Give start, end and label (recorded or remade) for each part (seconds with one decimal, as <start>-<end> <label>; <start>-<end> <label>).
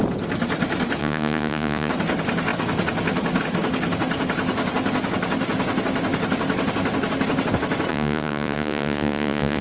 0.0-1.0 recorded; 1.0-1.9 remade; 1.9-7.9 recorded; 7.9-9.6 remade